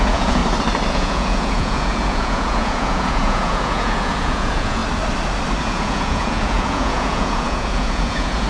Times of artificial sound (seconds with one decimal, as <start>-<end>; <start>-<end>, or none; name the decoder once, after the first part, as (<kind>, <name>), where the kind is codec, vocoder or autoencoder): 0.0-0.4 (vocoder, Vocos); 0.9-4.8; 5.6-8.5